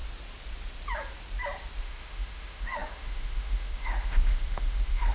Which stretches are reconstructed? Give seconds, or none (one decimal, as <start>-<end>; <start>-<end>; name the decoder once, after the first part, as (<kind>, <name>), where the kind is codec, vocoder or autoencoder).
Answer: 1.8-5.1 (autoencoder, DAC-VAE)